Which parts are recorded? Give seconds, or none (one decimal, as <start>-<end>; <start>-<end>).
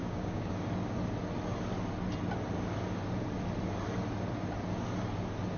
0.5-5.6